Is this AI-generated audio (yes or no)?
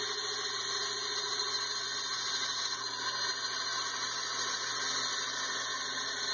no